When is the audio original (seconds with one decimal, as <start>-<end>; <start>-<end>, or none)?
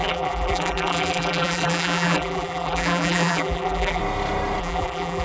4.0-4.6